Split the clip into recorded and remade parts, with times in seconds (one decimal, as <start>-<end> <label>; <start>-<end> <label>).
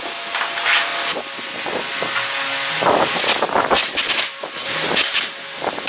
0.0-3.8 recorded; 3.8-4.4 remade; 4.4-5.9 recorded